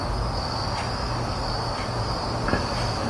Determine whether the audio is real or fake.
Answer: real